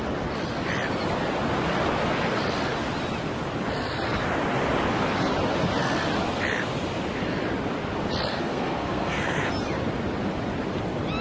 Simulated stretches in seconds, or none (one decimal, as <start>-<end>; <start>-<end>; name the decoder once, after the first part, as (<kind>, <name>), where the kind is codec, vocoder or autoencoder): 8.3-9.5 (codec, SNAC)